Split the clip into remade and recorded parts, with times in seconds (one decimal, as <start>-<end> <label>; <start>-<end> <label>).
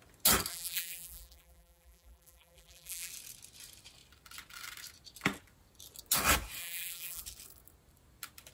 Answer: 0.0-0.5 recorded; 0.5-3.1 remade; 3.1-6.6 recorded; 6.6-7.2 remade; 7.2-8.5 recorded